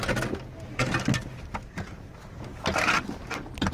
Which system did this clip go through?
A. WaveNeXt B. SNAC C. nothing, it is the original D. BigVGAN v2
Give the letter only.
C